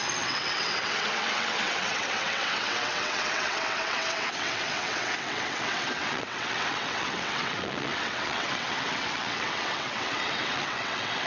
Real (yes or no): no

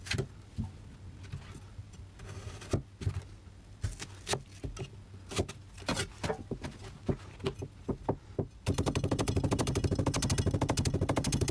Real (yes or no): yes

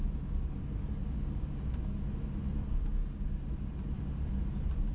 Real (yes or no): yes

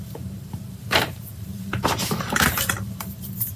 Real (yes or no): no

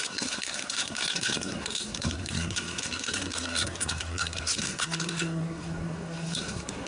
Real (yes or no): no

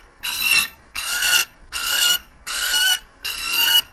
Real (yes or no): no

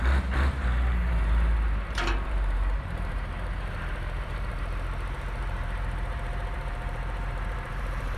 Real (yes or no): no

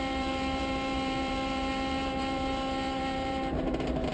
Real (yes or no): no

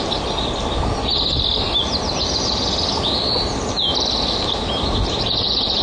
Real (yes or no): yes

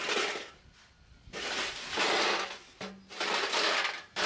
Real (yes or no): yes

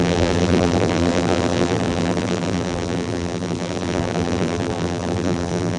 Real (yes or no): no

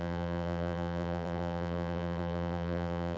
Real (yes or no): no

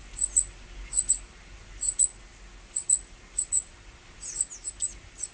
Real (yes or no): yes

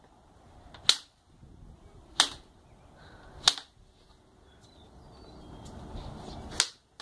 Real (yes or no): yes